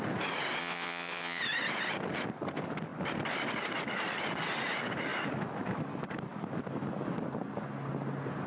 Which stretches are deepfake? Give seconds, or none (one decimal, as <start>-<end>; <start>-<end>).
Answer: 0.6-1.4